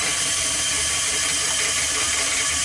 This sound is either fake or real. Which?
real